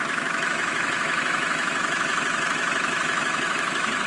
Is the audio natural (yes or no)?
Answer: no